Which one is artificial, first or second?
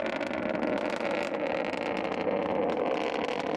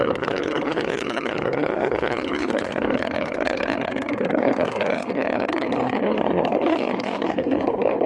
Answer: second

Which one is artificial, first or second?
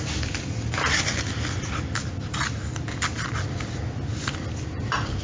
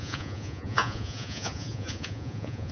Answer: second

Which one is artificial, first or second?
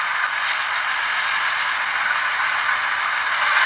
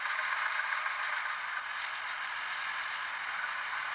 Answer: second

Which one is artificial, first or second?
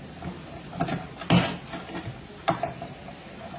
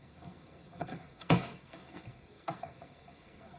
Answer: second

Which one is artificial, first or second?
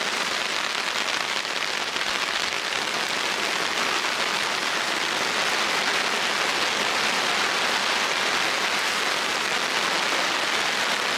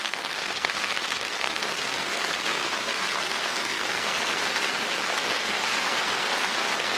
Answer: second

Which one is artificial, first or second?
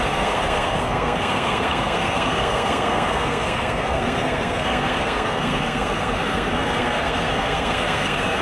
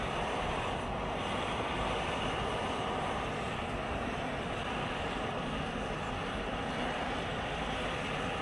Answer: first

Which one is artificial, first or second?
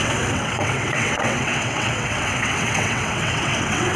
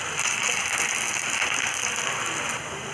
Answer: first